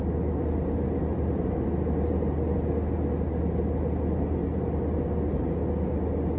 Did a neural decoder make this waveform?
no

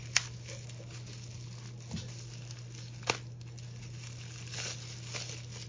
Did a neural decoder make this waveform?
no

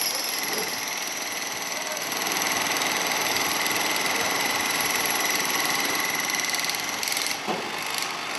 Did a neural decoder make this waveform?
no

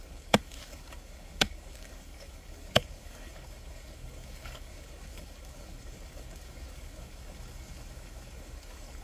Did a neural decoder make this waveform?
yes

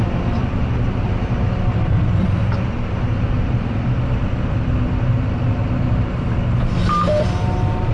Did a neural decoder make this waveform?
no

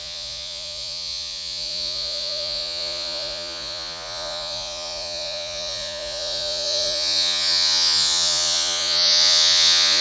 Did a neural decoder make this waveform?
yes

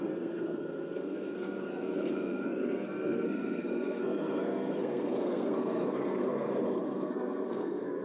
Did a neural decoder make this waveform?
yes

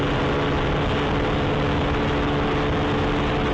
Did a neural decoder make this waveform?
no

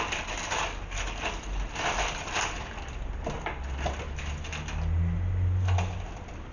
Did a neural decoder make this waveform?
no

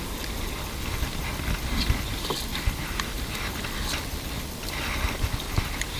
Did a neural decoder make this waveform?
no